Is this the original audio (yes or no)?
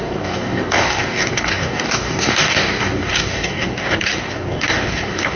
no